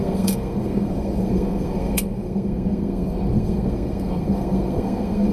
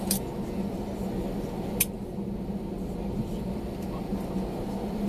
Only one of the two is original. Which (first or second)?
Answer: second